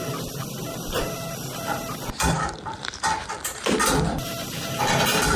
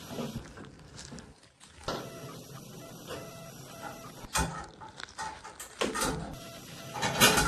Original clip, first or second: second